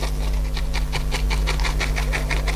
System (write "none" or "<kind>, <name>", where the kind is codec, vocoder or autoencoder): none